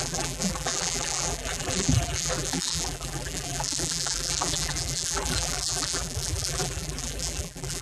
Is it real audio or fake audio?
fake